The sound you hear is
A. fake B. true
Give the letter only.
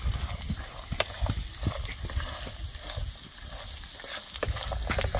B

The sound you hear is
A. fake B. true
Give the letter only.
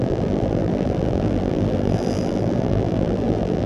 A